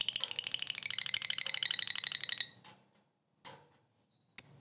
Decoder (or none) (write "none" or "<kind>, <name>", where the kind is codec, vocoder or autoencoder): none